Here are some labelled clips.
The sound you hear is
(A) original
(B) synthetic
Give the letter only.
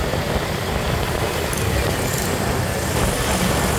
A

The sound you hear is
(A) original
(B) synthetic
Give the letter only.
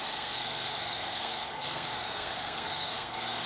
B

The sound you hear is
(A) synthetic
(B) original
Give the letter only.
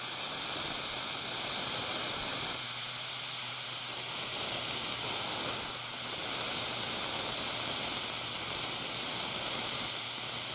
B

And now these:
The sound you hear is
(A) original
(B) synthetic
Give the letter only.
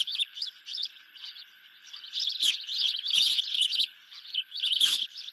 B